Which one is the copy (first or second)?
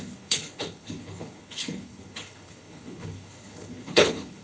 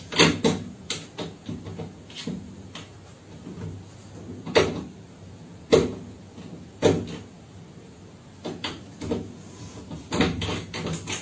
first